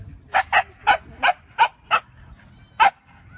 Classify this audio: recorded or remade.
recorded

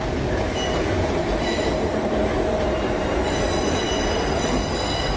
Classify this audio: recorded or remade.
recorded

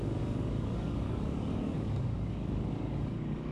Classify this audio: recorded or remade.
remade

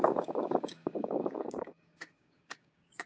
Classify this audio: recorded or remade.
remade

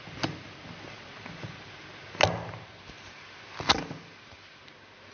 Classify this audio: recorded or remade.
recorded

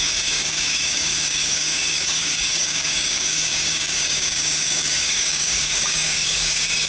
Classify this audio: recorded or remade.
remade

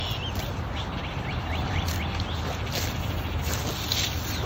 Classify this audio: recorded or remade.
recorded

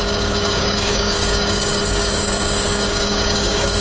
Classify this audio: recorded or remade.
remade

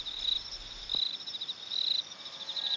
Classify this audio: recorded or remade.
recorded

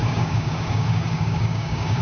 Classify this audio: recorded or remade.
remade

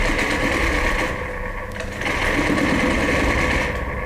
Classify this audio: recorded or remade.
recorded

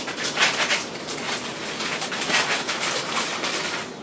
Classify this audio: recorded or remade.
recorded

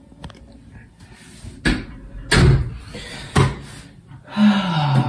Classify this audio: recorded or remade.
recorded